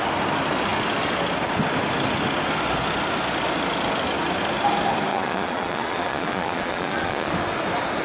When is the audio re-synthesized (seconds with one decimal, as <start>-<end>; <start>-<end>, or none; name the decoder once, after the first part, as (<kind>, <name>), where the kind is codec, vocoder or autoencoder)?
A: 5.1-7.3 (vocoder, Vocos)